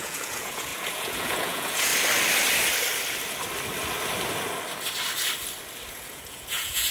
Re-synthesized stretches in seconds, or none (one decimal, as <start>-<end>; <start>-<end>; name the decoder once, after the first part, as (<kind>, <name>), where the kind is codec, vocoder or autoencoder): 0.0-1.9 (vocoder, Vocos); 5.9-6.9